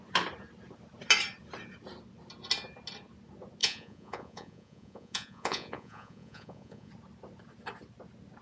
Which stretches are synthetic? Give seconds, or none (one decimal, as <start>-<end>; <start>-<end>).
3.6-6.9